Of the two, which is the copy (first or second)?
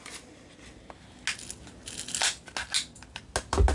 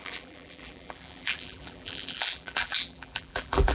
second